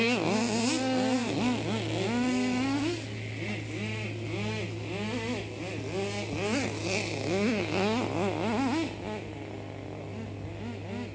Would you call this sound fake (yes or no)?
no